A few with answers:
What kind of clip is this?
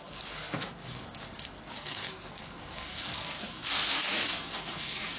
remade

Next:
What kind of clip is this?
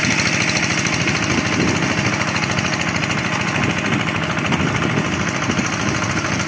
recorded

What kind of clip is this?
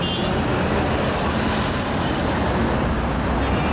recorded